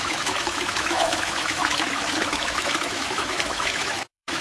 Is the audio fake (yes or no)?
yes